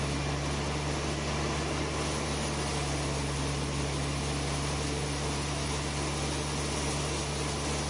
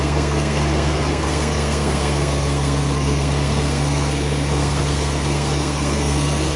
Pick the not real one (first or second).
second